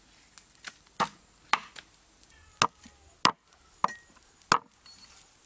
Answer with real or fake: real